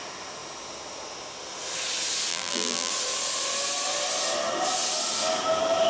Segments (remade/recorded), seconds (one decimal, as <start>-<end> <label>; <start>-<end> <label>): 0.0-2.3 recorded; 2.3-2.9 remade; 2.9-5.9 recorded